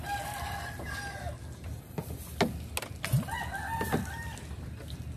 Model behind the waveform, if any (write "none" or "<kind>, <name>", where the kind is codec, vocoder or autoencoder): none